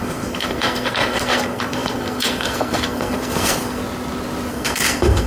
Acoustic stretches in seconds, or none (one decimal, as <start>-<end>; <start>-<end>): 3.8-4.5